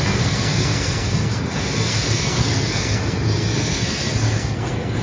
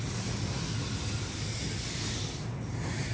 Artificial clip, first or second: first